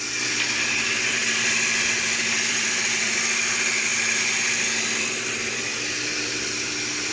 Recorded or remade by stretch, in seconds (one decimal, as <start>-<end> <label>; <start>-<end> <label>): 0.0-1.2 remade; 1.2-1.9 recorded; 1.9-3.9 remade; 3.9-4.9 recorded; 4.9-5.7 remade; 5.7-7.1 recorded